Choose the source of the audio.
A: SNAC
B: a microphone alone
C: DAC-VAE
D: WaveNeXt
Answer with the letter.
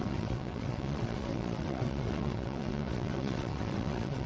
D